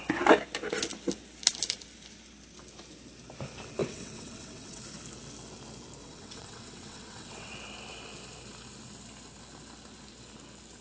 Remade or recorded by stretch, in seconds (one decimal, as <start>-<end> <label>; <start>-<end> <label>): 0.0-3.8 recorded; 3.8-4.8 remade; 4.8-6.0 recorded; 6.0-7.5 remade; 7.5-10.8 recorded